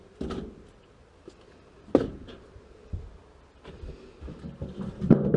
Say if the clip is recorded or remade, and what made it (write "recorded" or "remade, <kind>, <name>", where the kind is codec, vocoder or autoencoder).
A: recorded